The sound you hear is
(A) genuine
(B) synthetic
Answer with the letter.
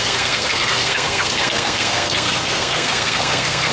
B